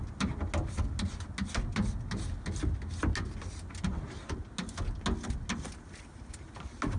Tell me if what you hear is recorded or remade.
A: recorded